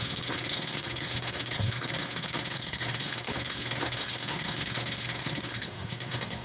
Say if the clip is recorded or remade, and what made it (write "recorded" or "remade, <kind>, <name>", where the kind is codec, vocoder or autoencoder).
remade, codec, SNAC